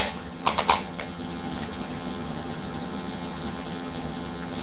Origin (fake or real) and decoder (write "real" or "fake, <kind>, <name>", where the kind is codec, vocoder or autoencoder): fake, vocoder, HiFi-GAN